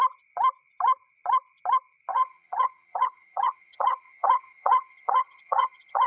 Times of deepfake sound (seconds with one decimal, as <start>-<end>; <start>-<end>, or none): 2.1-6.1